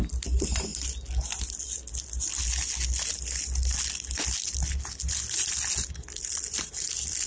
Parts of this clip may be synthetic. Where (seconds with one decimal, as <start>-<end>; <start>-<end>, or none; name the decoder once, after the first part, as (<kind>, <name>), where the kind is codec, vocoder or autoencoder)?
none